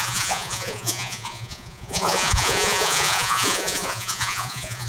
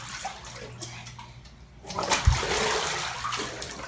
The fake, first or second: first